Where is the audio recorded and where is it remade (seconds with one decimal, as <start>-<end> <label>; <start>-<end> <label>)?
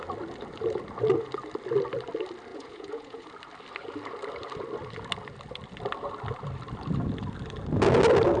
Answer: 0.0-2.5 recorded; 2.5-3.3 remade; 3.3-8.4 recorded